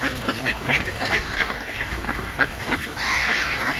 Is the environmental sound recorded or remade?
remade